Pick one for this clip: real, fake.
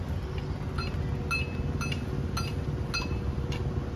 real